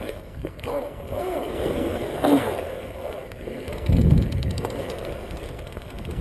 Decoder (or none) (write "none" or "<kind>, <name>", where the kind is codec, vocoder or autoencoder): codec, SNAC